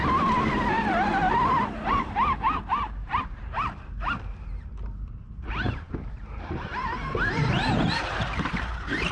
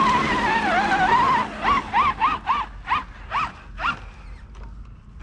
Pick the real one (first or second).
second